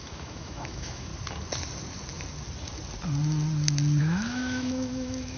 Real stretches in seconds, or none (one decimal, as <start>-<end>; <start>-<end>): 1.1-4.0